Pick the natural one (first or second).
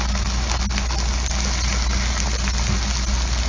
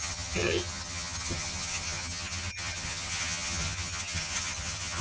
first